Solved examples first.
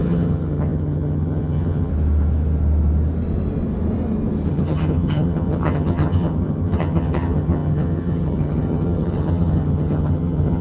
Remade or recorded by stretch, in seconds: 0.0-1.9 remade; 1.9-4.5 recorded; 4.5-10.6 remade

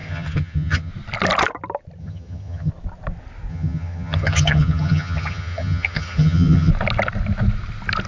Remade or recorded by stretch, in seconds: 0.0-0.9 remade; 0.9-2.0 recorded; 2.0-2.7 remade; 2.7-3.5 recorded; 3.5-6.7 remade; 6.7-8.1 recorded

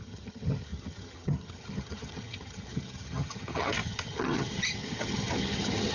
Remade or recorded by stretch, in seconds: 0.0-5.9 remade

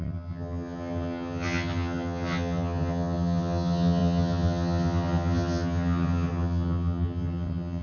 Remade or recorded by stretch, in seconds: 0.0-7.8 remade

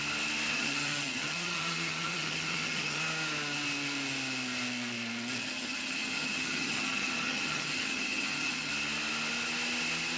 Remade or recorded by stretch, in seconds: 0.0-0.5 recorded; 0.5-3.0 remade; 3.0-5.4 recorded; 5.4-8.7 remade; 8.7-10.2 recorded